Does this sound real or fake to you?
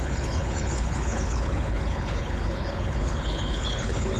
fake